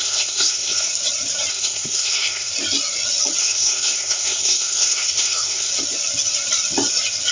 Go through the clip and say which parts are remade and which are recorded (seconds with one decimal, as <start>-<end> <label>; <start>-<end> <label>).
0.0-0.9 remade; 0.9-1.5 recorded; 1.5-2.5 remade; 2.5-3.4 recorded; 3.4-5.7 remade; 5.7-7.3 recorded